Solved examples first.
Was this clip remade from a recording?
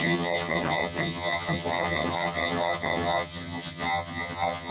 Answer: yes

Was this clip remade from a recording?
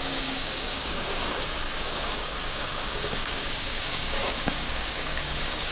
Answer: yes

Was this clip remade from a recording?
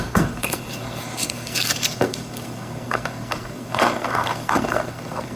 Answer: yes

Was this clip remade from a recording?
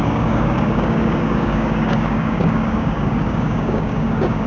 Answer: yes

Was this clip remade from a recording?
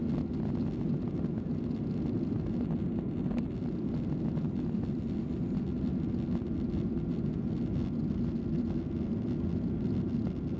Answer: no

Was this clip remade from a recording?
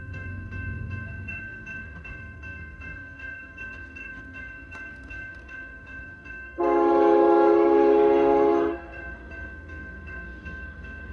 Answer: yes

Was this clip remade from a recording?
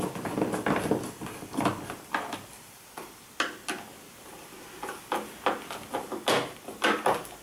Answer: no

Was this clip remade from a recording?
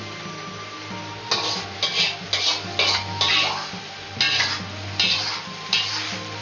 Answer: no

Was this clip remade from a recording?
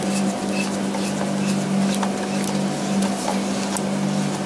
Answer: no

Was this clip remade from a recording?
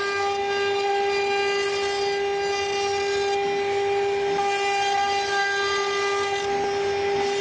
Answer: no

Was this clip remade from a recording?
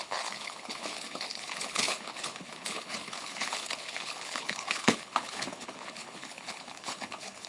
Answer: yes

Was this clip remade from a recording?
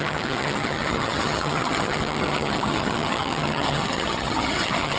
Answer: yes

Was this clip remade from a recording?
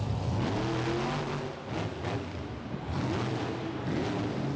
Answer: no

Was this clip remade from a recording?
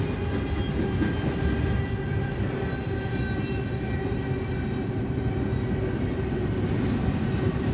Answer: no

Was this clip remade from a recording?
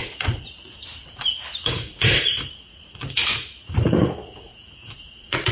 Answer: yes